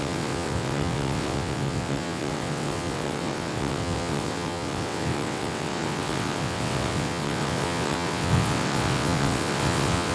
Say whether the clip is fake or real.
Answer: fake